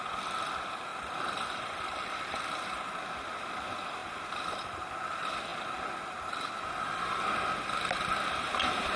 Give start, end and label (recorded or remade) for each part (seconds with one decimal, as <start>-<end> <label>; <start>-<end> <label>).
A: 0.0-0.9 recorded; 0.9-2.4 remade; 2.4-4.0 recorded; 4.0-4.8 remade; 4.8-9.0 recorded